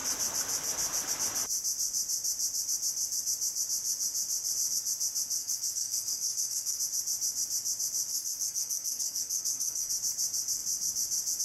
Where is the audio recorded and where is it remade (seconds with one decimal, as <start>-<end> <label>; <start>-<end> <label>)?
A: 0.0-5.4 recorded; 5.4-6.8 remade; 6.8-8.1 recorded; 8.1-9.9 remade; 9.9-11.4 recorded

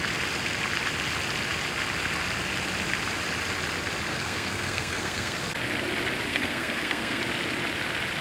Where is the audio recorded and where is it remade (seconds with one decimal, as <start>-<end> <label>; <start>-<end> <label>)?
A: 0.0-4.1 recorded; 4.1-5.4 remade; 5.4-6.3 recorded; 6.3-7.2 remade; 7.2-8.2 recorded

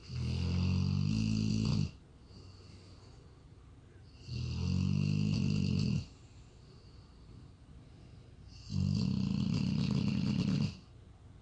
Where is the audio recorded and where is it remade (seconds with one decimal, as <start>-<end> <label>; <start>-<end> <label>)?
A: 0.0-11.4 recorded

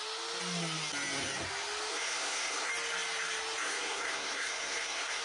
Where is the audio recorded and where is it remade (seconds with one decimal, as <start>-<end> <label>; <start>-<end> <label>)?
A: 0.0-1.9 recorded; 1.9-2.7 remade; 2.7-3.6 recorded; 3.6-5.2 remade

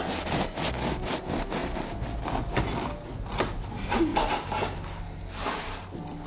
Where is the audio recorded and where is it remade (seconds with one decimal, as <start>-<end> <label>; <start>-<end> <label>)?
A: 0.0-6.3 recorded

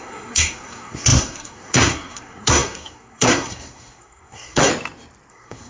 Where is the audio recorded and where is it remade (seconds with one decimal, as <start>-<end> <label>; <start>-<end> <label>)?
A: 0.0-4.7 remade; 4.7-5.3 recorded; 5.3-5.7 remade